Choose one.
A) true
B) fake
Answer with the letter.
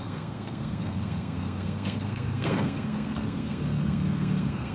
B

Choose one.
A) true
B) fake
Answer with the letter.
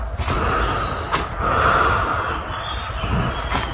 A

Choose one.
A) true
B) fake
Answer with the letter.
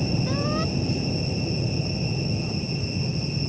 A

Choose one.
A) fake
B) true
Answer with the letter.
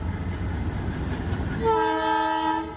B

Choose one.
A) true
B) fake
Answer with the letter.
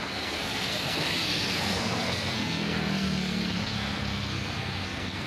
B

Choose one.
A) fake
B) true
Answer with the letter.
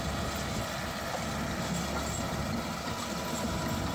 B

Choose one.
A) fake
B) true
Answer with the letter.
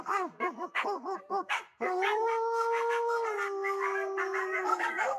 A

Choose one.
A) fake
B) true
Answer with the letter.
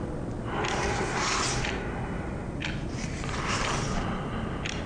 B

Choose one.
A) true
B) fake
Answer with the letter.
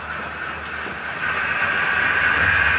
A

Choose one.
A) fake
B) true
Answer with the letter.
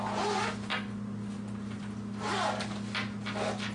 B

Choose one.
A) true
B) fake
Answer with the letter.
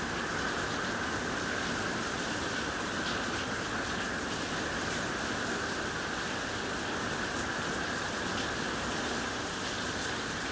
A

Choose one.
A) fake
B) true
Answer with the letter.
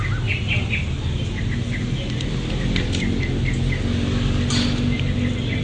B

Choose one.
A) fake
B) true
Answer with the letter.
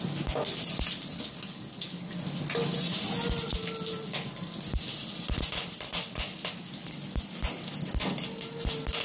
B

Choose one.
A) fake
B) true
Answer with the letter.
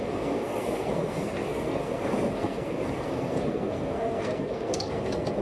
A